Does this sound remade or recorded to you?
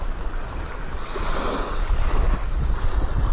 recorded